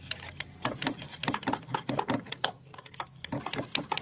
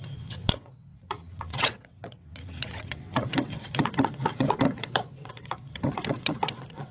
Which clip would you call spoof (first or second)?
second